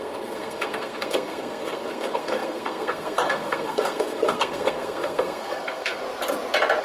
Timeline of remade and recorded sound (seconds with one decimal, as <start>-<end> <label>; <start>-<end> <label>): 0.0-6.0 remade; 6.0-6.8 recorded